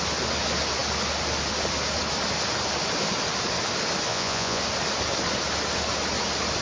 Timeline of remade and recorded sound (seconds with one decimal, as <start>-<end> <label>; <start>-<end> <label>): 0.0-4.1 recorded; 4.1-4.6 remade; 4.6-6.6 recorded